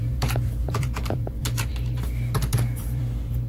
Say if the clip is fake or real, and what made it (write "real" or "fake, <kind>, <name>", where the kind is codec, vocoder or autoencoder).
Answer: fake, vocoder, BigVGAN v2